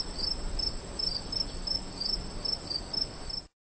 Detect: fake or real real